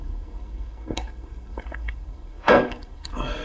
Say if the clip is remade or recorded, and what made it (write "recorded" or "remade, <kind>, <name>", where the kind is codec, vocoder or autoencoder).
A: remade, codec, SNAC